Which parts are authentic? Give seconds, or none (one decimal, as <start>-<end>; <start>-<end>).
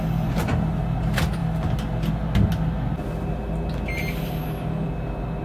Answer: 0.0-5.4